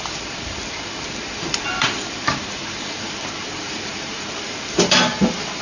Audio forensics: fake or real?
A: fake